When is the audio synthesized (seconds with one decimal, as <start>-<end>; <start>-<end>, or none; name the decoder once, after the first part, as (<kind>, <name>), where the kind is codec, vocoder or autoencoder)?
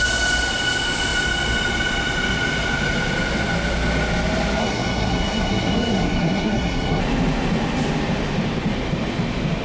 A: 4.6-7.0 (codec, SNAC)